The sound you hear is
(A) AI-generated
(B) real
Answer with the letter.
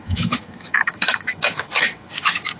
A